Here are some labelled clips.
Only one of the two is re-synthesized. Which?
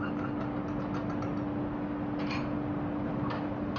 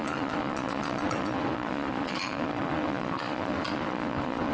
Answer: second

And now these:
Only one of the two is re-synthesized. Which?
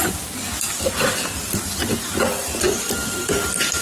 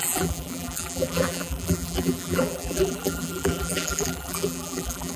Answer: second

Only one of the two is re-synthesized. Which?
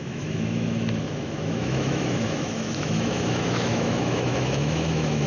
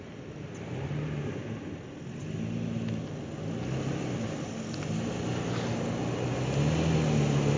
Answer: first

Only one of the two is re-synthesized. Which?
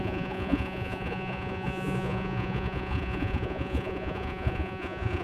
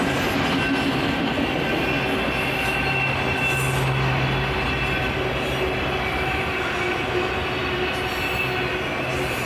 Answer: first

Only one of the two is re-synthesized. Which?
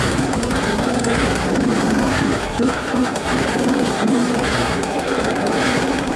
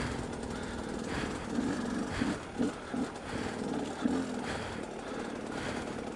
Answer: first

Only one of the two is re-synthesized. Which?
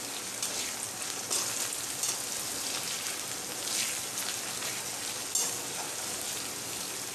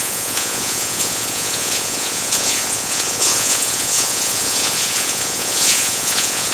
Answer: second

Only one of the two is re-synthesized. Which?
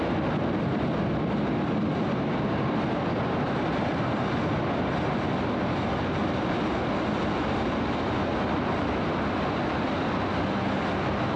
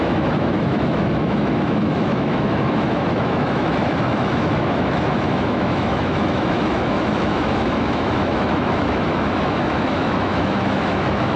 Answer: second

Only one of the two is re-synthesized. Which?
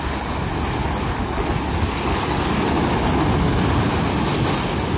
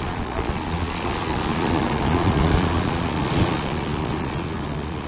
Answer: second